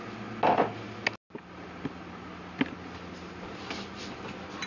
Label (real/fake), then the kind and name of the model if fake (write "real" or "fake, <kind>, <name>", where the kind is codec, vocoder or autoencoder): real